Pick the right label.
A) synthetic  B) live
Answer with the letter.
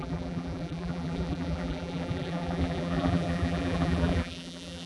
A